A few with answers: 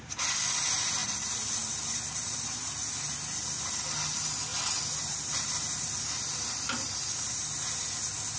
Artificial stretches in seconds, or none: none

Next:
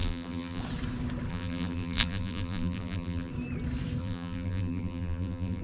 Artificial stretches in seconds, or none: 0.0-0.6 (vocoder, BigVGAN v2); 1.3-3.3; 4.0-5.6

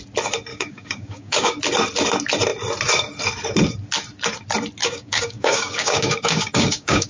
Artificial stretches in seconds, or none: 0.5-1.6 (codec, DAC); 4.8-7.1

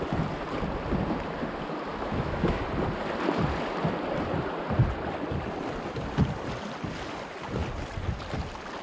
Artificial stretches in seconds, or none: 1.9-2.6 (autoencoder, DAC-VAE)

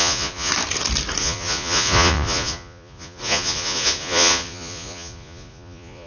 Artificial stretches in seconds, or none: 0.0-0.5 (vocoder, Vocos); 1.2-6.1

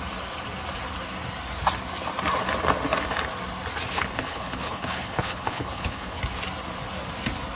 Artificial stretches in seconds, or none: 3.9-6.2 (codec, HILCodec)

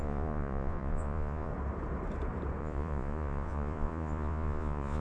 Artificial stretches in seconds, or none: 0.0-1.5 (vocoder, Vocos); 2.6-5.0